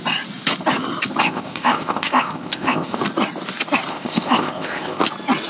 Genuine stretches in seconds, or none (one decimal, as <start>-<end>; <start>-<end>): 0.0-1.2; 3.0-3.9; 5.0-5.5